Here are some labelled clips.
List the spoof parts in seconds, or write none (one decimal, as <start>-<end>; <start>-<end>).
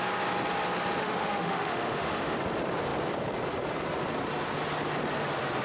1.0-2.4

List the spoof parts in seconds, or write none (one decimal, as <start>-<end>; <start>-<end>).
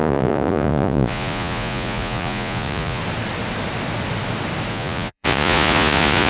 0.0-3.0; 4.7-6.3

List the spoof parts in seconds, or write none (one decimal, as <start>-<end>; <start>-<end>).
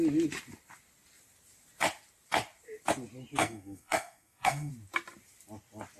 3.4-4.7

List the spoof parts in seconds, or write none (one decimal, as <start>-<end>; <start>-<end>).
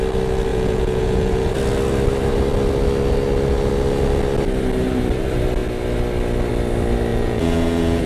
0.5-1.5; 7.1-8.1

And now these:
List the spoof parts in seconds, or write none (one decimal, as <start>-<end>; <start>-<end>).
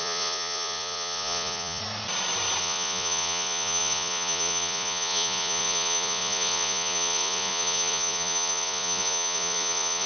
0.0-1.8; 2.6-10.1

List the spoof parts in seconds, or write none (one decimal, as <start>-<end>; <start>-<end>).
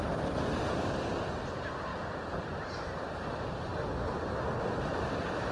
1.9-2.4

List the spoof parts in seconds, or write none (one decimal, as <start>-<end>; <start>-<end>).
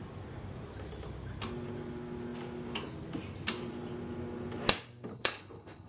5.1-5.9